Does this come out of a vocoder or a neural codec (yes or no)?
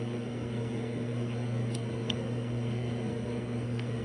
yes